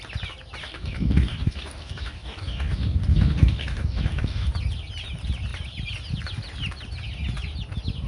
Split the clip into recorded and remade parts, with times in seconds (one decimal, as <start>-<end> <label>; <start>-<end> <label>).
0.0-0.6 recorded; 0.6-4.5 remade; 4.5-8.1 recorded